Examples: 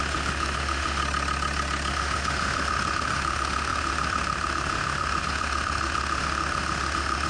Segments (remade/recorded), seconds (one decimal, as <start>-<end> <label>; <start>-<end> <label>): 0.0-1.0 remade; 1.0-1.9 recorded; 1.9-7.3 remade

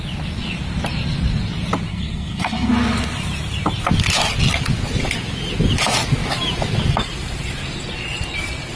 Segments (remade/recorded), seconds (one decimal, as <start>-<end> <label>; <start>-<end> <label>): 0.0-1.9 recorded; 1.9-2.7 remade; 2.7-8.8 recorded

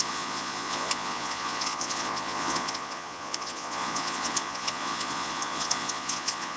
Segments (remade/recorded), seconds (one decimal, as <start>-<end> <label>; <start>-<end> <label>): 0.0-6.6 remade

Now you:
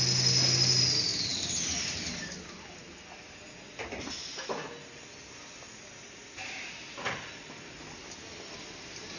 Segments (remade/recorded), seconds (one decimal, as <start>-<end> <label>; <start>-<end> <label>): 0.0-9.2 recorded